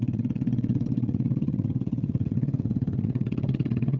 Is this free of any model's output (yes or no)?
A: no